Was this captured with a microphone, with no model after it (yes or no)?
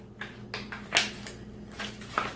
yes